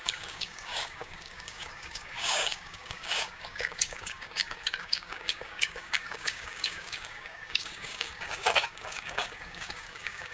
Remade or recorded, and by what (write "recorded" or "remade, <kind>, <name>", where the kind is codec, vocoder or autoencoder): remade, codec, DAC